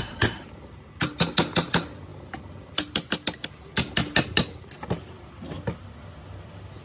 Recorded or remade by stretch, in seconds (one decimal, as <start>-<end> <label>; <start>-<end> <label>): 0.0-6.8 recorded